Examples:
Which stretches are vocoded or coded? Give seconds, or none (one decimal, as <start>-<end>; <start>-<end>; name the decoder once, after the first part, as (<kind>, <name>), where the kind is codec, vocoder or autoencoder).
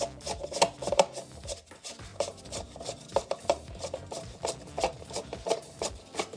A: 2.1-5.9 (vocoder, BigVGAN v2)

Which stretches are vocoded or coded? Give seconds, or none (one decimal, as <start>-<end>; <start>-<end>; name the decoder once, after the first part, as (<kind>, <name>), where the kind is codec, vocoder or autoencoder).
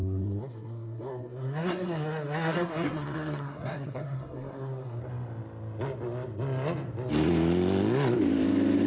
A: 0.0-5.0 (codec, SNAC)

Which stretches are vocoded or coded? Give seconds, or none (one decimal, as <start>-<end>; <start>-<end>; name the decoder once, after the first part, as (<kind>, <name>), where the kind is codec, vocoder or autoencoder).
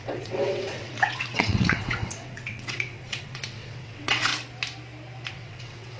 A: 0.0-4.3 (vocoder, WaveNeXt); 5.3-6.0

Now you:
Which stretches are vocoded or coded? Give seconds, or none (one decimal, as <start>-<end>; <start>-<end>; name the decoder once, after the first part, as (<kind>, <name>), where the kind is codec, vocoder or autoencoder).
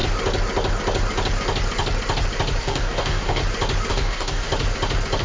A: 2.6-3.4 (codec, DAC); 3.9-4.5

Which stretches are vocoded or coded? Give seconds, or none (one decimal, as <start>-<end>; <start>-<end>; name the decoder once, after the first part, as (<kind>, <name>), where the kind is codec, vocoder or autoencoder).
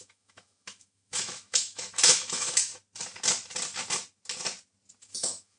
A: 0.0-2.7 (autoencoder, DAC-VAE); 5.0-5.6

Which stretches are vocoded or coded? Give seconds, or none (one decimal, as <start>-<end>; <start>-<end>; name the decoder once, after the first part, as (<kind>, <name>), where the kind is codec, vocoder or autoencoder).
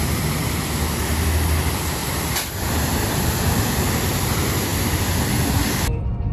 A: 2.0-3.6 (vocoder, BigVGAN v2)